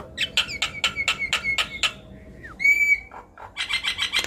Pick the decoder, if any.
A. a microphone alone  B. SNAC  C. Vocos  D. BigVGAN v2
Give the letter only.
A